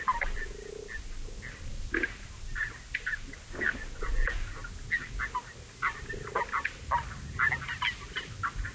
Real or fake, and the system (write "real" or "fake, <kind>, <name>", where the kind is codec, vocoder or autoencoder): real